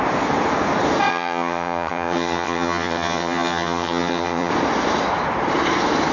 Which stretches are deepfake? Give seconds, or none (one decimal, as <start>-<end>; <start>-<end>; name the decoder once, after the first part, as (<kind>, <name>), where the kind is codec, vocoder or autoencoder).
1.1-4.5 (vocoder, HiFi-GAN)